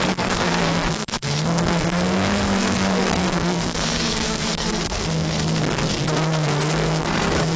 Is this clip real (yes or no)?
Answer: no